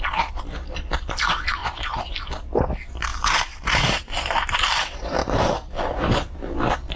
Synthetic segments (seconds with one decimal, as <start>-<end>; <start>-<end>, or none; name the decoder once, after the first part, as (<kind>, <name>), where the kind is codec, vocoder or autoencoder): 1.6-2.5 (vocoder, BigVGAN v2); 3.1-4.6; 5.2-6.4